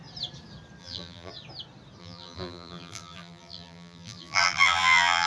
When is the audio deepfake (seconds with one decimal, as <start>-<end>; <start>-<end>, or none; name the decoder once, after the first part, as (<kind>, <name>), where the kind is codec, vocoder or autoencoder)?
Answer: 0.8-1.3 (vocoder, BigVGAN v2); 2.0-5.3